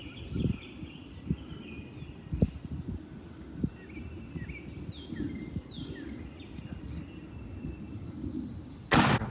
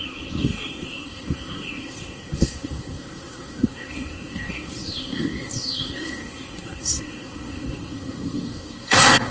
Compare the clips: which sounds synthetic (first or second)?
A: second